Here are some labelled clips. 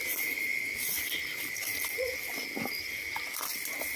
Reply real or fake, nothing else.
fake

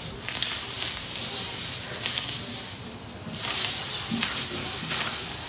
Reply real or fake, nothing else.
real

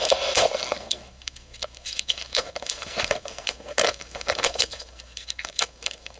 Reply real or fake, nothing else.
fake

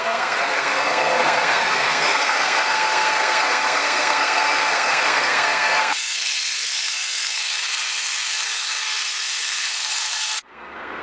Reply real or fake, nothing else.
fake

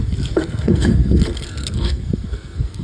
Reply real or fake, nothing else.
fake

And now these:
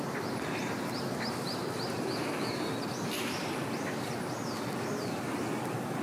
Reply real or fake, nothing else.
real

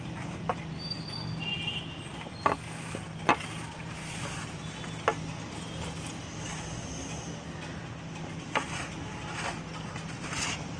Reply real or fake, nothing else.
real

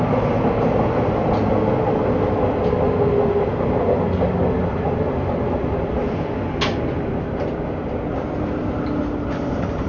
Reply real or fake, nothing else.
real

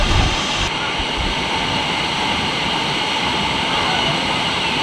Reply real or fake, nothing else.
real